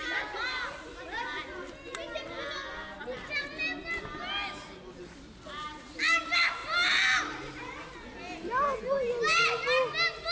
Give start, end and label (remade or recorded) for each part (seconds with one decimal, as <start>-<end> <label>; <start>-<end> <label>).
0.0-10.3 recorded